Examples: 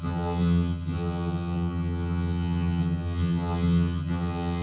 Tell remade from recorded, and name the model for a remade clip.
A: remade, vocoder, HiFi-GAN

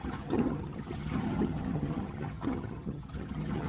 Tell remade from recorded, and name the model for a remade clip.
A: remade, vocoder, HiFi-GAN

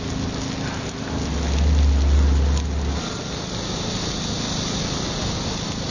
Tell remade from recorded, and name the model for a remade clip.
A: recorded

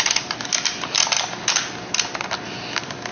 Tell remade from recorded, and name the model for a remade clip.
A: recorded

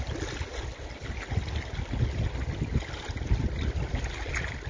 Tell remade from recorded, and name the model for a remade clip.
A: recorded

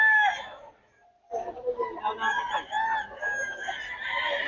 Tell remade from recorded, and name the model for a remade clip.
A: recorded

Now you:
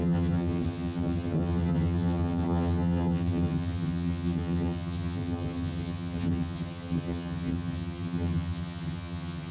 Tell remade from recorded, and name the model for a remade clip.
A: remade, vocoder, HiFi-GAN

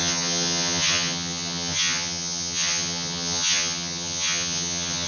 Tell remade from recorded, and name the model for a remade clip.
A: remade, vocoder, HiFi-GAN